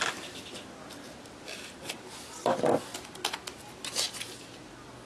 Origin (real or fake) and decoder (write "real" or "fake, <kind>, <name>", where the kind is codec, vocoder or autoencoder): real